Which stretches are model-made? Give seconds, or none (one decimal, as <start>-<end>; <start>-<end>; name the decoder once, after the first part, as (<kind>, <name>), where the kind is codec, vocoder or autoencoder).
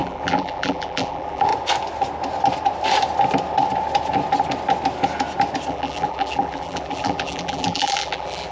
0.0-1.5 (vocoder, BigVGAN v2); 5.7-8.5